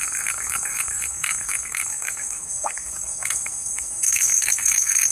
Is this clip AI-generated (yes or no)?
yes